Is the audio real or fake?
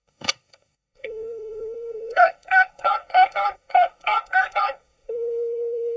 fake